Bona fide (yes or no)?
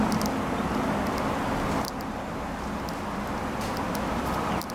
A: yes